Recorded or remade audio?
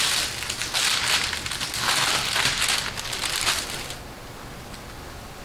recorded